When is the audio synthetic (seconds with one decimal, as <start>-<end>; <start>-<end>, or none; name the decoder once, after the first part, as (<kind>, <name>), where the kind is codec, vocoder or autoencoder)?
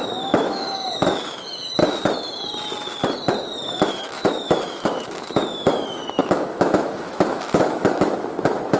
0.0-1.8 (autoencoder, DAC-VAE); 3.9-8.8